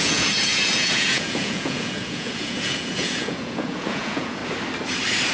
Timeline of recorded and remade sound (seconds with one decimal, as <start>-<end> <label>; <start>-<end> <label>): 0.0-4.4 remade; 4.4-5.3 recorded